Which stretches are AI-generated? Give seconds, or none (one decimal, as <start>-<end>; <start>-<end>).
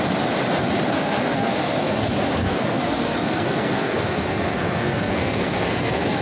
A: 0.9-2.0; 2.4-6.2